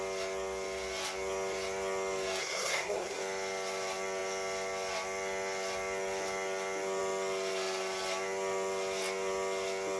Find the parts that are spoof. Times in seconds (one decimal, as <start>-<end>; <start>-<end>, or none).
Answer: 2.4-3.2